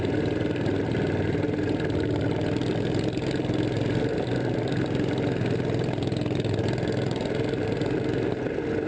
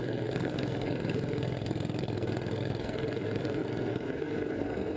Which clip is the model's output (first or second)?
second